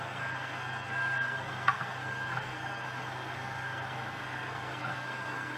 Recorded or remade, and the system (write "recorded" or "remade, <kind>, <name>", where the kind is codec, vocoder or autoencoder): remade, codec, SNAC